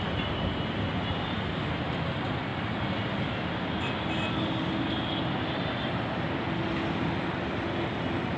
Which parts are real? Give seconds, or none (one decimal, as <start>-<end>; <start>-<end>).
0.0-8.4